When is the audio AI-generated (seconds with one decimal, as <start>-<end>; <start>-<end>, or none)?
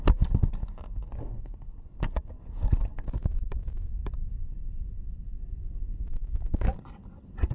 4.0-6.4